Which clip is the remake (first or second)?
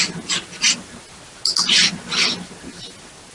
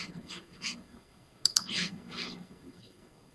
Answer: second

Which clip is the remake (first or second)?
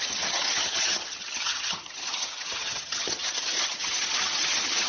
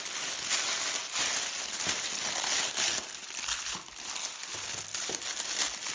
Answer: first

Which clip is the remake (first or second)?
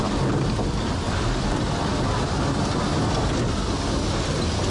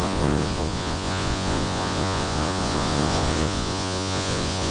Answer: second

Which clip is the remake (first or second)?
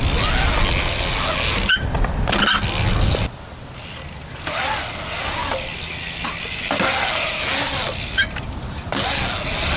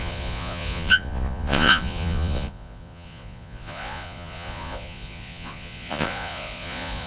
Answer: second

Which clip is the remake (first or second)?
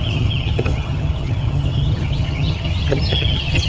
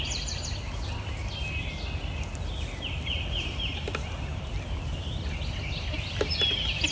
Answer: first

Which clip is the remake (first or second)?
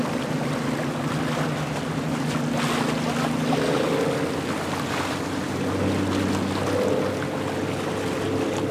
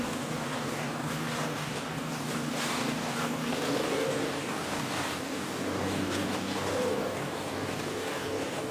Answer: second